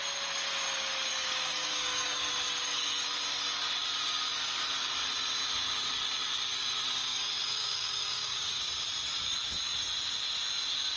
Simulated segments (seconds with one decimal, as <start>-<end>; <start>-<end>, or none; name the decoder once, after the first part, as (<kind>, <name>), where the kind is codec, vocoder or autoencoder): 1.1-2.3 (codec, DAC); 7.1-8.6